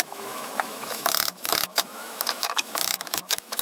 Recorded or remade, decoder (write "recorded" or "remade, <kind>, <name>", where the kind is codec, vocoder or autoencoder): remade, autoencoder, DAC-VAE